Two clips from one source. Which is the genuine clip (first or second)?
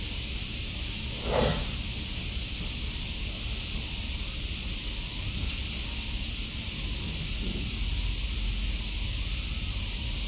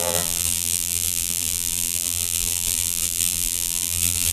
first